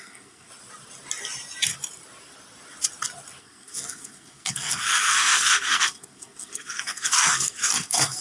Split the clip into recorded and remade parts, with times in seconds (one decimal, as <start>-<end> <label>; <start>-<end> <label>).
0.0-0.5 remade; 0.5-3.4 recorded; 3.4-8.2 remade